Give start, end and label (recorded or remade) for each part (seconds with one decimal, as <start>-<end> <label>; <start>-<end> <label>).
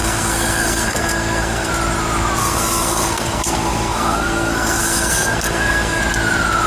0.0-1.7 remade; 1.7-2.4 recorded; 2.4-6.0 remade; 6.0-6.7 recorded